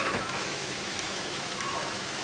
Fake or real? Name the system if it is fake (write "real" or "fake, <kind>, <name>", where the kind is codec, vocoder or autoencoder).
fake, autoencoder, DAC-VAE